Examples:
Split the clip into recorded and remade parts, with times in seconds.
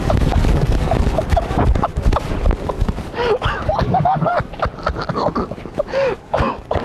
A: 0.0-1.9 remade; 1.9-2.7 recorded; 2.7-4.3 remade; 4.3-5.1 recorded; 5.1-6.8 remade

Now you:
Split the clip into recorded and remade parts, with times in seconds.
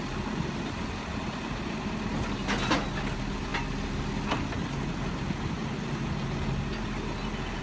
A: 0.0-7.6 recorded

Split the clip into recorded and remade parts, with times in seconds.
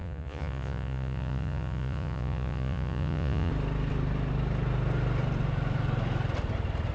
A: 0.0-3.5 remade; 3.5-6.9 recorded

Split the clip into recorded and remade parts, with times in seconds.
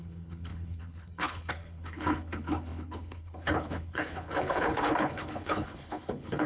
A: 0.0-6.5 remade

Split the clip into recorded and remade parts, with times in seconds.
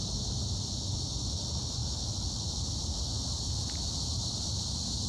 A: 0.0-5.1 recorded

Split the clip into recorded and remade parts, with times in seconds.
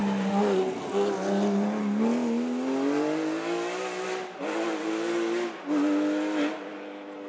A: 0.0-7.3 recorded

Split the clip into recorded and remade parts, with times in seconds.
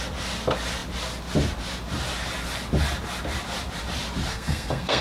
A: 0.0-4.3 recorded; 4.3-5.0 remade